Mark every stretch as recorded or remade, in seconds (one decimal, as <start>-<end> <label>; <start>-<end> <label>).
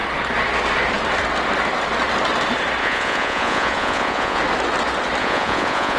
0.0-2.8 recorded; 2.8-4.4 remade; 4.4-5.2 recorded; 5.2-6.0 remade